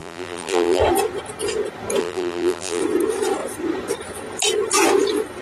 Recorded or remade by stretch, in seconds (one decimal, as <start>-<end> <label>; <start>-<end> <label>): 0.0-0.8 remade; 0.8-2.0 recorded; 2.0-2.8 remade; 2.8-5.4 recorded